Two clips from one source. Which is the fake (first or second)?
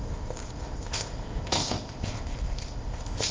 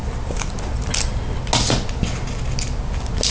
first